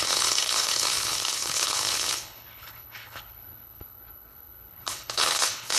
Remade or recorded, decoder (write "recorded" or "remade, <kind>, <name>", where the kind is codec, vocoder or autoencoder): remade, codec, HILCodec